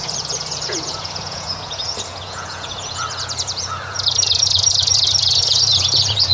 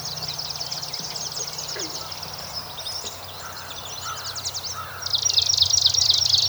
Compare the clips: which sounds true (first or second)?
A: second